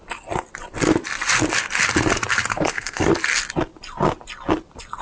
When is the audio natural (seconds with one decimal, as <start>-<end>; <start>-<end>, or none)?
0.0-2.5; 3.1-5.0